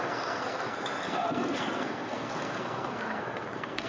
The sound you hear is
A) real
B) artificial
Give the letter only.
B